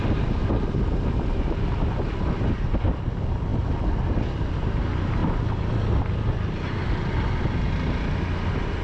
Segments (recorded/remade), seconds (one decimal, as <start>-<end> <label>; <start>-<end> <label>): 0.0-8.8 recorded